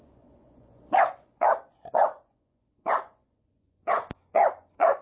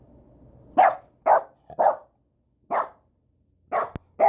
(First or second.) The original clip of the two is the second